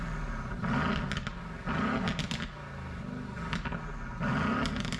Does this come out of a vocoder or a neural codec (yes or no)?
no